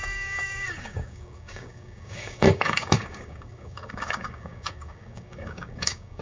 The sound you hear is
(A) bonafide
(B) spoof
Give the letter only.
B